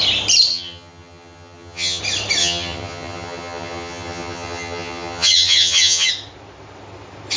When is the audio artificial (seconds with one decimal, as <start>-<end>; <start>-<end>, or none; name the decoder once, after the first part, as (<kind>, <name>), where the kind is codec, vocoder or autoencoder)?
0.5-2.0 (vocoder, HiFi-GAN); 2.4-6.1